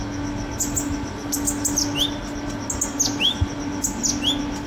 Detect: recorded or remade recorded